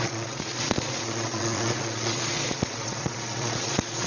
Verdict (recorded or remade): remade